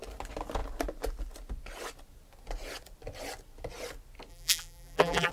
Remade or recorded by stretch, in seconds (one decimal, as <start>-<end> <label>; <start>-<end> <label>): 0.0-4.3 recorded; 4.3-5.3 remade